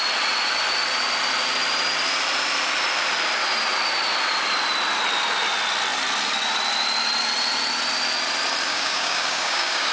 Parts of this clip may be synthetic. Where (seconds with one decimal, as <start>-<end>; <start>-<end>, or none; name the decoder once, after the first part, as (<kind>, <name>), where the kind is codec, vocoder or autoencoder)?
8.7-9.9 (codec, DAC)